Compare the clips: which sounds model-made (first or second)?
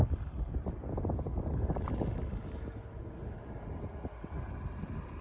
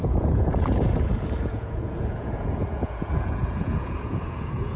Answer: second